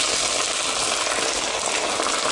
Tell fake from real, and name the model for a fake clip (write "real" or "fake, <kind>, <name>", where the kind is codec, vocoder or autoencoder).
real